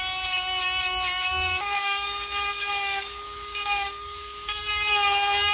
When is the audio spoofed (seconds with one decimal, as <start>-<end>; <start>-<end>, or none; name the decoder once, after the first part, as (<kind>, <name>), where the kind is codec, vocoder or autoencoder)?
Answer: 1.3-4.6 (codec, DAC)